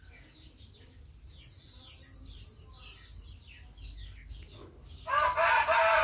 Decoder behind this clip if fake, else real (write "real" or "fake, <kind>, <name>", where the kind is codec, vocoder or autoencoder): real